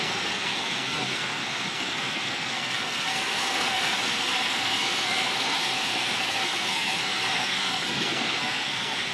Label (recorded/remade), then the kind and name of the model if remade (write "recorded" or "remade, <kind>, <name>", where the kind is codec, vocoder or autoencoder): remade, codec, SNAC